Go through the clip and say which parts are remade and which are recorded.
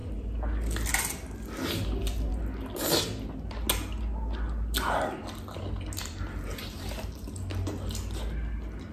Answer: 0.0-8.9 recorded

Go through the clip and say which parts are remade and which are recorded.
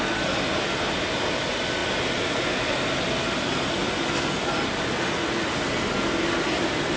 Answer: 0.0-7.0 recorded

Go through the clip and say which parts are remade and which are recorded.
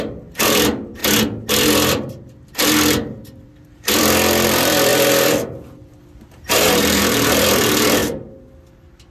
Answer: 0.0-1.0 remade; 1.0-1.9 recorded; 1.9-4.9 remade; 4.9-6.3 recorded; 6.3-8.0 remade; 8.0-9.1 recorded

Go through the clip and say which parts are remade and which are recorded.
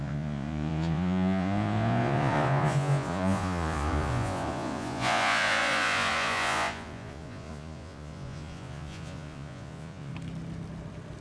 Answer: 0.0-10.1 remade; 10.1-11.2 recorded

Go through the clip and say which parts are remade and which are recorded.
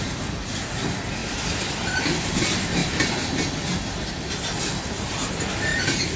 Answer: 0.0-1.2 recorded; 1.2-2.3 remade; 2.3-5.7 recorded; 5.7-6.2 remade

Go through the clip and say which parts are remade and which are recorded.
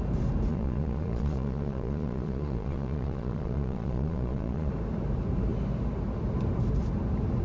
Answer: 0.0-0.5 recorded; 0.5-4.7 remade; 4.7-7.4 recorded